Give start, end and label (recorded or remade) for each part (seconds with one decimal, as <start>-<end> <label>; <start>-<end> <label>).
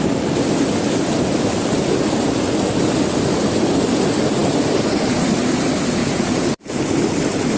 0.0-6.0 recorded; 6.0-6.8 remade; 6.8-7.6 recorded